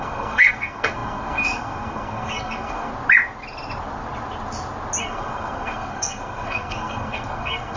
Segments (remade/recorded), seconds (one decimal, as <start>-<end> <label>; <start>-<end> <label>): 0.0-2.9 remade; 2.9-5.0 recorded; 5.0-7.8 remade